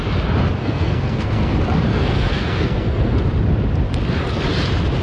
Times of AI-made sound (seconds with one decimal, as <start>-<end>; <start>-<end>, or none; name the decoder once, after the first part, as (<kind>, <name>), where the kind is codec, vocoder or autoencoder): 0.6-1.5 (codec, SNAC); 1.9-3.2